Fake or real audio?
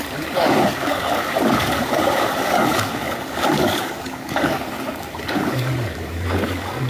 fake